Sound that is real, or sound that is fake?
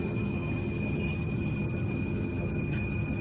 fake